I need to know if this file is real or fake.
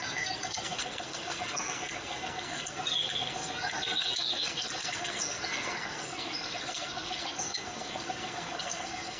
fake